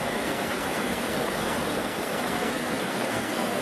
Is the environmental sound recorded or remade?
remade